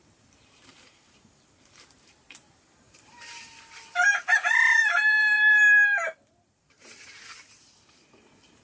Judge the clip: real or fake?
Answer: fake